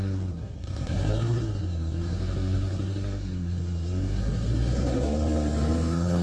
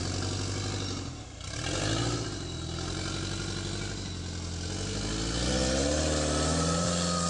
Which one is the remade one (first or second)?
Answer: first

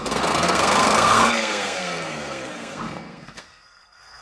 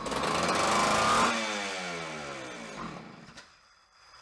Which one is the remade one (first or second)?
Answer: first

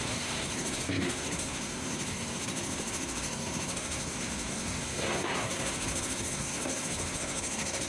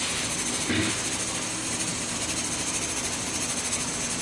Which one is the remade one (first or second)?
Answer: first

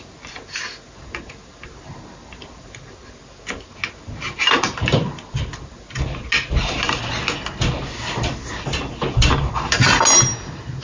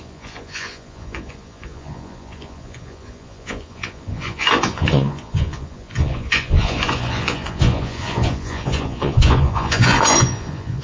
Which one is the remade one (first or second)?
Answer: second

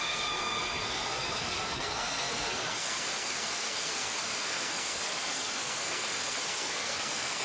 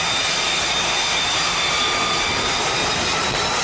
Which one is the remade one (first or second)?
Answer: first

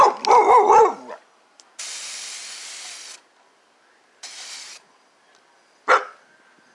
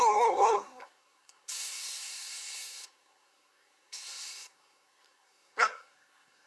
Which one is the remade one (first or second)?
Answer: second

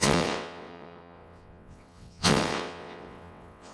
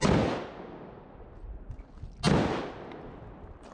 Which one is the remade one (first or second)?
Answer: first